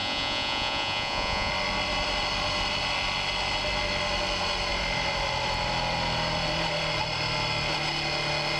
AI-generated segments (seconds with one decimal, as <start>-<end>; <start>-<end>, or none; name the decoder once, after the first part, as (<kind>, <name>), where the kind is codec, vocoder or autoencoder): 0.0-1.5 (vocoder, Vocos)